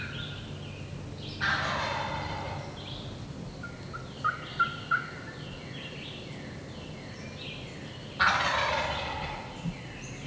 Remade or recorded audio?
recorded